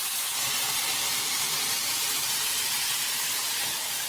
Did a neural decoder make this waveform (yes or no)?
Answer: no